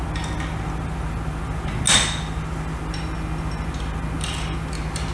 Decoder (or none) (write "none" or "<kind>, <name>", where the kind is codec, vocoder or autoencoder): none